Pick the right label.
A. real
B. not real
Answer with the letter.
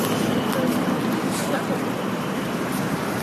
A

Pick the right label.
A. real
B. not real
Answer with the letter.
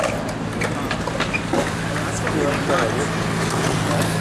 A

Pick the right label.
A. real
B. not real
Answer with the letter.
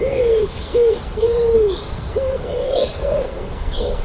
B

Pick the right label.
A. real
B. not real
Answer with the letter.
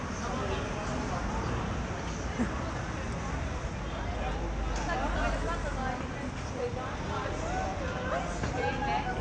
A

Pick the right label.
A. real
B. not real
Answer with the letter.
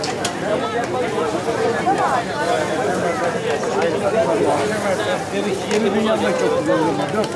A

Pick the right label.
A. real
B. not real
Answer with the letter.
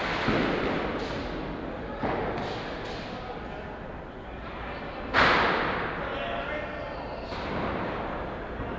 A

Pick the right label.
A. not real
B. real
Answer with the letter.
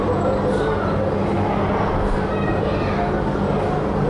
B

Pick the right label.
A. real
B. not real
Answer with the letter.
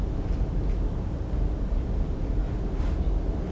A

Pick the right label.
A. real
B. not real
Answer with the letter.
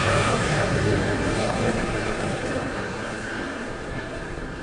B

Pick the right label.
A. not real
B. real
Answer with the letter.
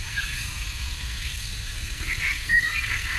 A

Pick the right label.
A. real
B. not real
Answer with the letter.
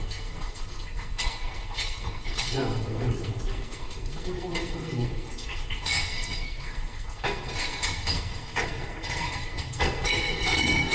B